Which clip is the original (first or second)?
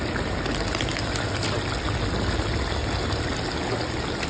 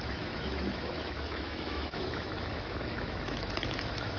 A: first